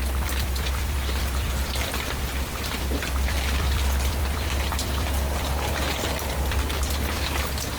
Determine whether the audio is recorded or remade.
remade